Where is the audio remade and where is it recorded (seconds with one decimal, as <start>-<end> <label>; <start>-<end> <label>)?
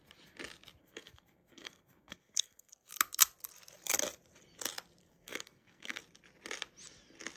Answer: 0.0-0.8 recorded; 0.8-2.9 remade; 2.9-5.0 recorded; 5.0-6.0 remade; 6.0-7.4 recorded